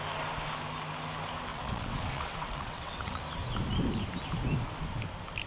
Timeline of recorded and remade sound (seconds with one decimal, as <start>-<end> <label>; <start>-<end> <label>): 0.0-1.5 recorded; 1.5-3.2 remade; 3.2-5.5 recorded

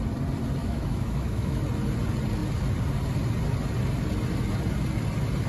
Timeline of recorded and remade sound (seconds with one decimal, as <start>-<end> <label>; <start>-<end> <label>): 0.0-0.6 recorded; 0.6-1.6 remade; 1.6-5.5 recorded

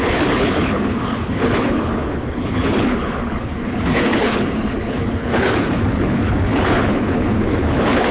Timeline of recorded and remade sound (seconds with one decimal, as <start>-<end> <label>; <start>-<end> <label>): 0.0-8.1 remade

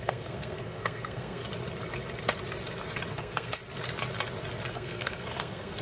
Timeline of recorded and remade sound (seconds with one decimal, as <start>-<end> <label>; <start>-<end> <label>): 0.0-1.4 remade; 1.4-3.1 recorded; 3.1-3.6 remade; 3.6-4.7 recorded; 4.7-5.8 remade

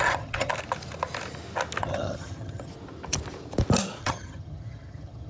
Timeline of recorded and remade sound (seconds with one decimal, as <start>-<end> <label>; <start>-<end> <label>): 0.0-0.5 remade; 0.5-1.8 recorded; 1.8-2.7 remade; 2.7-4.0 recorded; 4.0-5.3 remade

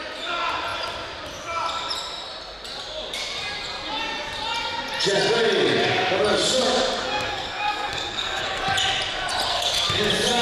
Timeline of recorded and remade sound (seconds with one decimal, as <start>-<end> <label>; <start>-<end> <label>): 0.0-7.0 recorded; 7.0-8.6 remade; 8.6-9.5 recorded; 9.5-10.0 remade; 10.0-10.4 recorded

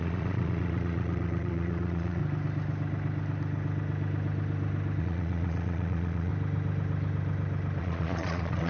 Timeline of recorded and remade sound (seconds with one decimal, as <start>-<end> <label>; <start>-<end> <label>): 0.0-2.2 remade; 2.2-5.0 recorded; 5.0-6.3 remade; 6.3-7.8 recorded; 7.8-8.7 remade

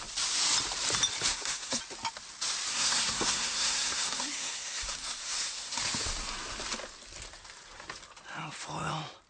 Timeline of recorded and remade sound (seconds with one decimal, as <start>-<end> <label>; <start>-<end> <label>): 0.0-1.3 recorded; 1.3-1.8 remade; 1.8-2.7 recorded; 2.7-5.8 remade; 5.8-9.3 recorded